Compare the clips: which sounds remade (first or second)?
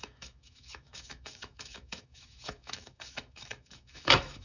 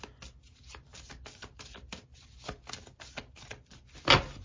first